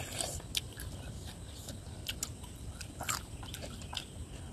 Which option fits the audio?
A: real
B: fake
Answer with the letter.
A